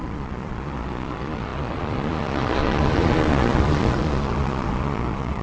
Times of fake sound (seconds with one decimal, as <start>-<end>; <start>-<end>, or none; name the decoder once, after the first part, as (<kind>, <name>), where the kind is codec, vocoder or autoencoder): 0.0-5.4 (vocoder, Vocos)